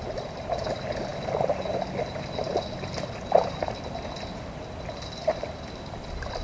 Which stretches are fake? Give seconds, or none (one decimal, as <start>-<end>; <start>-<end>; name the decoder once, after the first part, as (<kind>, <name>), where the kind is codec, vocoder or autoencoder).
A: none